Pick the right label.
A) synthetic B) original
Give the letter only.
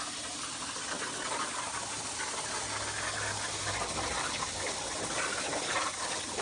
B